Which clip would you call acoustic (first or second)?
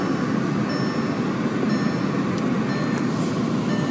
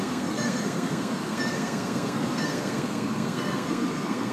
first